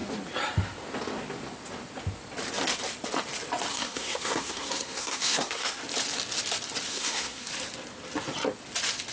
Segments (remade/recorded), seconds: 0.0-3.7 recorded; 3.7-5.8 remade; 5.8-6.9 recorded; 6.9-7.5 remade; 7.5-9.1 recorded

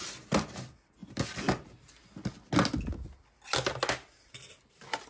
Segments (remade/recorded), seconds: 0.0-5.1 recorded